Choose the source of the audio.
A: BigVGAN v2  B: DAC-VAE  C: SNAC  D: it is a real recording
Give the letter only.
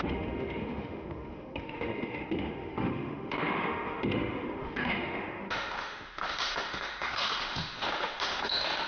B